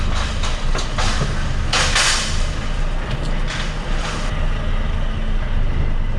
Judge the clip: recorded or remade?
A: recorded